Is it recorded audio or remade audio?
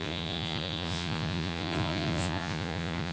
remade